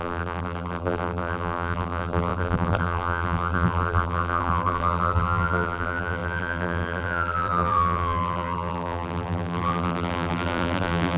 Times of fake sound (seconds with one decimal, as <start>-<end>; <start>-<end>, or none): 0.0-11.2